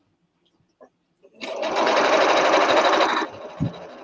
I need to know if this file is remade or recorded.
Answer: recorded